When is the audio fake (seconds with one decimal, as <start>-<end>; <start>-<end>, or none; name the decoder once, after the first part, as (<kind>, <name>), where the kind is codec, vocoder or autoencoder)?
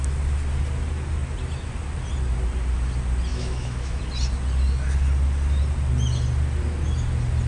3.3-4.0 (autoencoder, DAC-VAE)